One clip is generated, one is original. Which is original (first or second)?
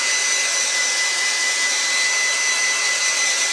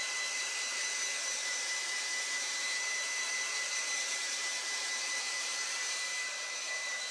first